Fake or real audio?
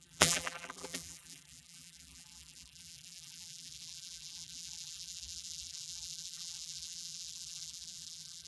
fake